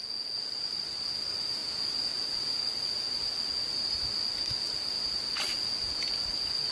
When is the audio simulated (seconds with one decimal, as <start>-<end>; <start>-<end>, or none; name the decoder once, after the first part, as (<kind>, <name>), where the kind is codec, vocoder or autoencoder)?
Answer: none